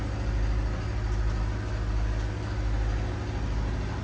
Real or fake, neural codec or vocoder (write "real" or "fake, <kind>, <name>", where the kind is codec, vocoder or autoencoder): real